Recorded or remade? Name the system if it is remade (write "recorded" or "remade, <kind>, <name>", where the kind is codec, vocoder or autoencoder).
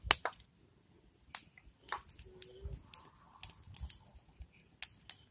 recorded